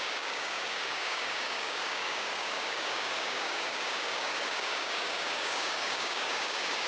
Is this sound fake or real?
fake